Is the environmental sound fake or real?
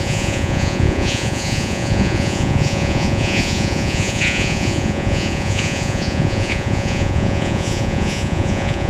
fake